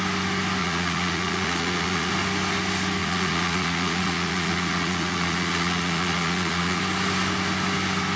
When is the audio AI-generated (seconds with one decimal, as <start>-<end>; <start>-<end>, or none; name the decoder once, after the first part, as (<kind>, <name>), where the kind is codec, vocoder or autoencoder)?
0.6-2.1 (vocoder, Vocos); 3.0-6.8